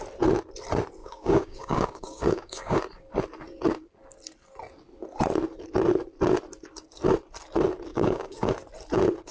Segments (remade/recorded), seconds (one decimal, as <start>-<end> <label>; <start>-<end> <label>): 0.0-1.0 recorded; 1.0-2.8 remade; 2.8-7.9 recorded; 7.9-8.5 remade; 8.5-9.3 recorded